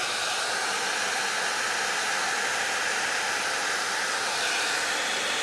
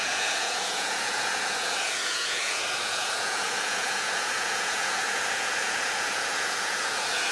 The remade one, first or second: second